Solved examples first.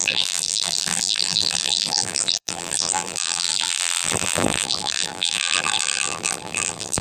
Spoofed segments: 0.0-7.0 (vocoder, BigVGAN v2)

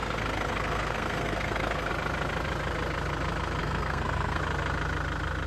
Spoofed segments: 0.0-1.9 (codec, SNAC); 3.6-4.4

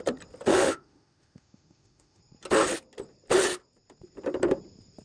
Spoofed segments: 0.5-2.2 (autoencoder, DAC-VAE)

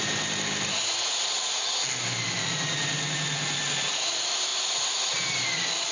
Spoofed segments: none

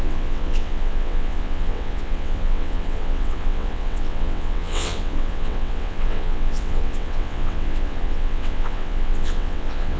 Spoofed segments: 0.0-10.0 (vocoder, WaveNeXt)